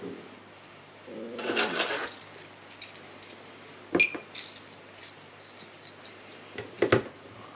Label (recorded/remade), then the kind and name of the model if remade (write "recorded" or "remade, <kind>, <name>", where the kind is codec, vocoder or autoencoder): recorded